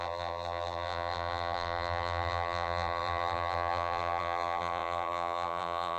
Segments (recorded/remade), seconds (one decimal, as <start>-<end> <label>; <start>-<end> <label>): 0.0-6.0 remade